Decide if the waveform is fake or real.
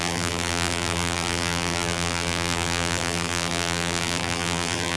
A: fake